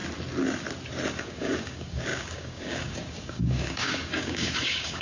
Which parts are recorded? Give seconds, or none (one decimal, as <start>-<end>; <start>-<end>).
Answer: 0.0-1.1